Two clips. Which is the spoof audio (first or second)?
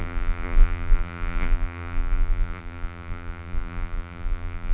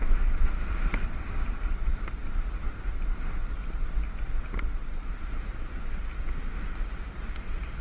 first